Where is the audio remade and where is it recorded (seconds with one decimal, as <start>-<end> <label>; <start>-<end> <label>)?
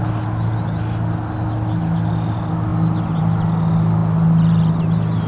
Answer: 0.0-5.3 recorded